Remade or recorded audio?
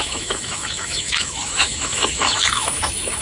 remade